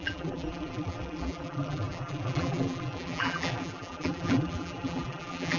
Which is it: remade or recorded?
remade